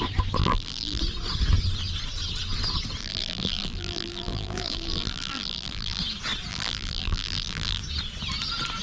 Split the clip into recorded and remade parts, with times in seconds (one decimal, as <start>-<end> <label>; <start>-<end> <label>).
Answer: 0.0-0.4 recorded; 0.4-1.0 remade; 1.0-3.0 recorded; 3.0-6.0 remade; 6.0-6.5 recorded; 6.5-7.8 remade; 7.8-8.8 recorded